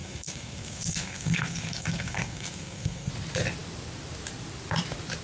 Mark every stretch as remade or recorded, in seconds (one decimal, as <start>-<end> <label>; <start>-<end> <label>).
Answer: 0.0-3.1 remade; 3.1-5.2 recorded